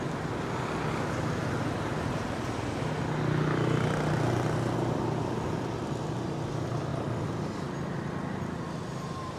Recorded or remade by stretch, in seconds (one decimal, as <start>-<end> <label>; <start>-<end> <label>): 0.0-9.4 recorded